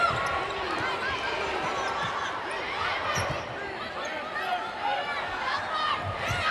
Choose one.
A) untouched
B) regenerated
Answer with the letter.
A